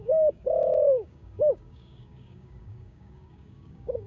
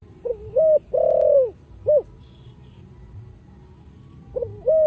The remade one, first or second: first